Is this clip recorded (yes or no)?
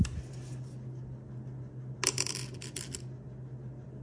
yes